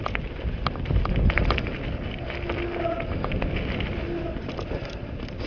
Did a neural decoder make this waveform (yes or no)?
no